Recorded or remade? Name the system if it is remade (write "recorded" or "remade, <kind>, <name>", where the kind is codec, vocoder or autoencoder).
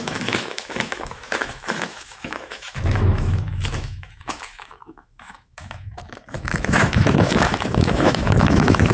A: remade, autoencoder, DAC-VAE